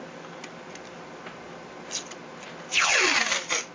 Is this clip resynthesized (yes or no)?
no